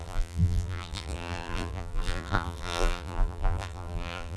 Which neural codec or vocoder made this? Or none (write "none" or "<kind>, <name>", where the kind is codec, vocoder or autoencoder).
vocoder, BigVGAN v2